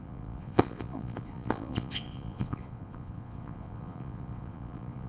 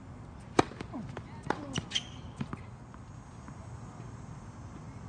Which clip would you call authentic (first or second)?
second